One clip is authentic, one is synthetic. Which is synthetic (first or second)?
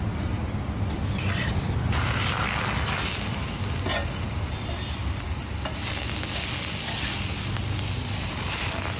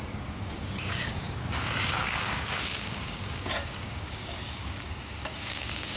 second